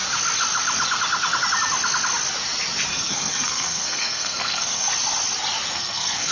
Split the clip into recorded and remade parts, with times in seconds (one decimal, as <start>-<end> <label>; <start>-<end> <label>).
0.0-2.9 recorded; 2.9-4.9 remade; 4.9-5.7 recorded; 5.7-6.3 remade